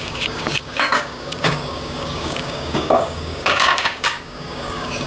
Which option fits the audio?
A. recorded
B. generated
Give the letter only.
B